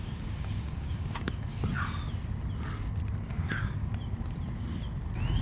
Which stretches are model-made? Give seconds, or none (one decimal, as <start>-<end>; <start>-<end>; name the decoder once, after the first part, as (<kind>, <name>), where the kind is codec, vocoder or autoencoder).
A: 0.0-1.6 (codec, DAC); 3.3-3.9